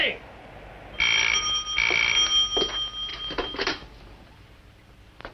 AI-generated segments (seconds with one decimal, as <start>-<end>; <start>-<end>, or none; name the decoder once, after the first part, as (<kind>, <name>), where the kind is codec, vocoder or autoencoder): 3.1-4.6 (vocoder, BigVGAN v2)